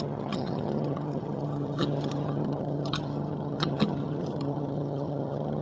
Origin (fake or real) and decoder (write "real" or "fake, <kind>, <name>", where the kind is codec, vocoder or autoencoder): fake, vocoder, HiFi-GAN